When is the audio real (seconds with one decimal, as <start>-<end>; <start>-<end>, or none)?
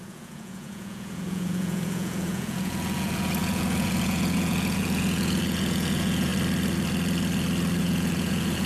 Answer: 6.3-7.8